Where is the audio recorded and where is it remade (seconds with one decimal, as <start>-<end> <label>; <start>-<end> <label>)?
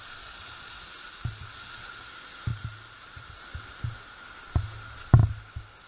0.0-2.5 recorded; 2.5-3.4 remade; 3.4-5.9 recorded